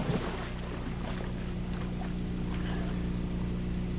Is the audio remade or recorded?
recorded